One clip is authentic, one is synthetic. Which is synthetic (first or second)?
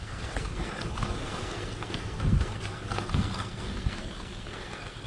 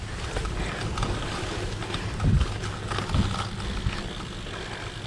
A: first